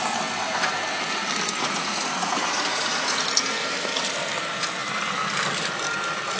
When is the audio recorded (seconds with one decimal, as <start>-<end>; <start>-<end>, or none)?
0.0-1.6; 3.3-6.4